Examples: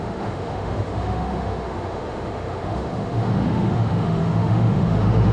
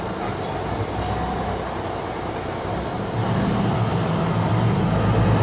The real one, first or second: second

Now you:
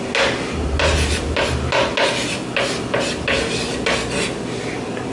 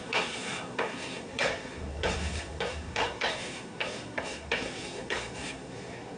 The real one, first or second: first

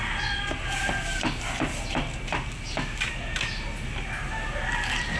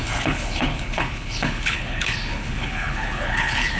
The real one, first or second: first